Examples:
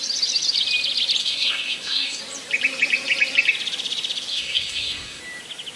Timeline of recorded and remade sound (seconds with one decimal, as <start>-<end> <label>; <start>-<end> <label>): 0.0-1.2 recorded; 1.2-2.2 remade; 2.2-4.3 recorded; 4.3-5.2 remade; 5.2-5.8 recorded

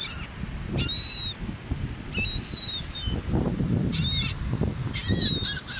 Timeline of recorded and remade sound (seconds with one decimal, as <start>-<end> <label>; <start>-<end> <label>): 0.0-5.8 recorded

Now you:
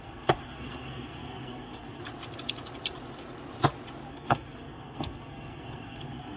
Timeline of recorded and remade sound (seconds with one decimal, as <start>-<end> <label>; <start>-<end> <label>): 0.0-2.0 remade; 2.0-4.1 recorded; 4.1-6.4 remade

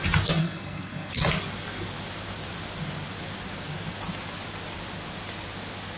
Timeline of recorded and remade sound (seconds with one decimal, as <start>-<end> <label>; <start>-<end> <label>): 0.0-0.4 recorded; 0.4-1.1 remade; 1.1-6.0 recorded

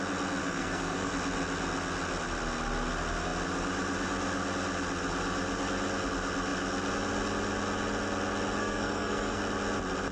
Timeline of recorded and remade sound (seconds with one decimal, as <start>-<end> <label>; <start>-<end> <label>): 0.0-0.4 recorded; 0.4-1.1 remade; 1.1-8.6 recorded; 8.6-9.4 remade; 9.4-10.1 recorded

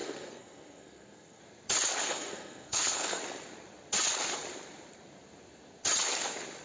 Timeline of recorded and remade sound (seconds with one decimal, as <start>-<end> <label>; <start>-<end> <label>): 0.0-1.4 remade; 1.4-2.0 recorded; 2.0-3.2 remade; 3.2-6.6 recorded